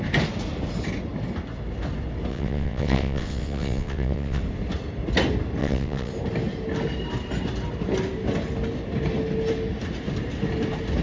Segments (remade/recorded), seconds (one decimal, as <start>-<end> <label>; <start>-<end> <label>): 0.0-2.3 recorded; 2.3-4.4 remade; 4.4-5.6 recorded; 5.6-6.1 remade; 6.1-11.0 recorded